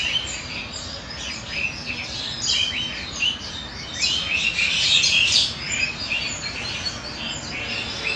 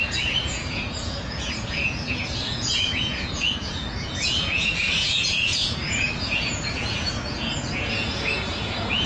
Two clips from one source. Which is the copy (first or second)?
second